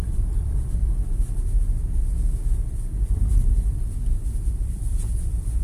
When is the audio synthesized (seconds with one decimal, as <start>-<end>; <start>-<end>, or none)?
0.0-0.8; 3.7-5.6